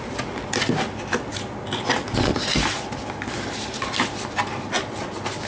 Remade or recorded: recorded